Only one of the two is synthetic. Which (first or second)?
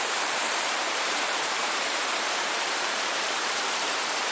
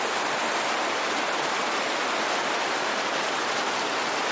first